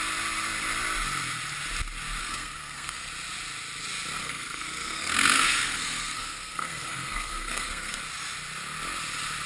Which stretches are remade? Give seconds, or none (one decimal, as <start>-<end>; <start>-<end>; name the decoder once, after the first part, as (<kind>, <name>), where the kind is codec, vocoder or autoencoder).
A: 2.2-3.1 (codec, SNAC); 4.2-8.0